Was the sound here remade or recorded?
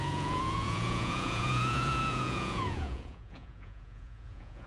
remade